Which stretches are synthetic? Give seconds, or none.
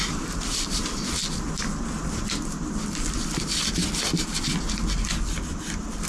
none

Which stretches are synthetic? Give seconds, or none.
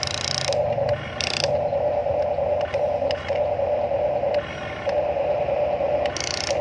none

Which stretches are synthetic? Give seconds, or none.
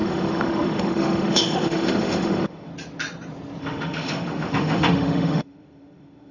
0.0-2.7 (autoencoder, DAC-VAE); 3.6-6.3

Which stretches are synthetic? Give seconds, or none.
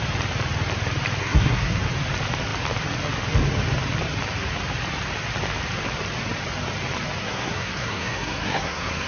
1.2-1.8 (codec, SNAC); 7.2-9.1